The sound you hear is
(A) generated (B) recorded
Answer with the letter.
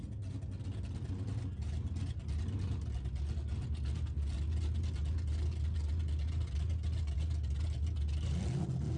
B